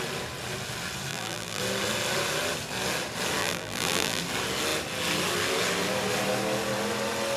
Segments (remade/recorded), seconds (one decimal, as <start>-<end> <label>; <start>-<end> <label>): 0.0-1.1 recorded; 1.1-1.6 remade; 1.6-3.4 recorded; 3.4-4.2 remade; 4.2-7.4 recorded